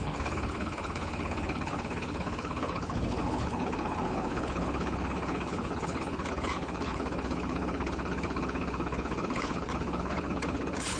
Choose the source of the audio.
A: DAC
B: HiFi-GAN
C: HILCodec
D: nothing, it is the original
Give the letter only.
C